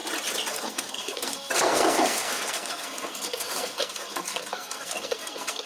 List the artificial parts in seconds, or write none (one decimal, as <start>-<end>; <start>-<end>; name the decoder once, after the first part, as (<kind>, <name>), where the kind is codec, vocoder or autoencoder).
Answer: 0.5-5.7 (codec, SNAC)